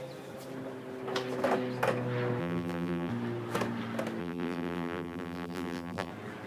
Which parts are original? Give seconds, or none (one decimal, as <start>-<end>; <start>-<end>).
0.0-2.4; 3.1-4.2; 6.1-6.5